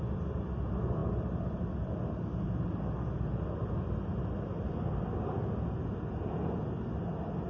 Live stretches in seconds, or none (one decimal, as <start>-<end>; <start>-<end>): 0.0-7.5